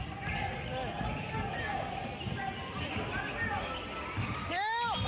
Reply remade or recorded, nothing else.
recorded